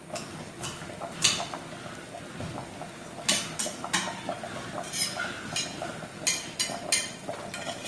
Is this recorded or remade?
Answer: recorded